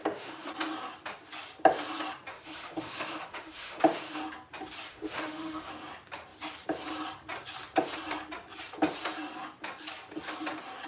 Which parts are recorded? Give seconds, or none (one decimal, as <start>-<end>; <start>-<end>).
0.5-2.3; 4.2-4.9; 5.7-10.9